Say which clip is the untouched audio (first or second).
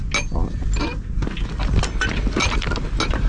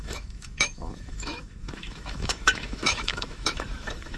first